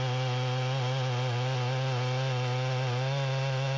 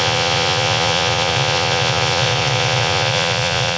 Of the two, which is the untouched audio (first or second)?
first